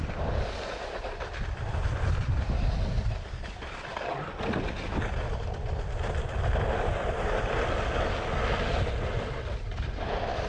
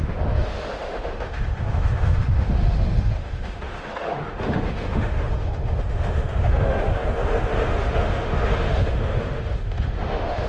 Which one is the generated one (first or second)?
second